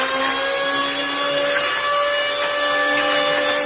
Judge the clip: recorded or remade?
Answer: recorded